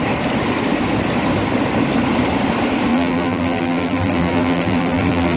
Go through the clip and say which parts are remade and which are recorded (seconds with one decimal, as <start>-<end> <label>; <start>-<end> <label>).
0.0-2.9 recorded; 2.9-5.4 remade